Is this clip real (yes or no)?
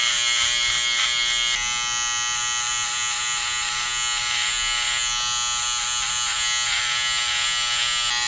yes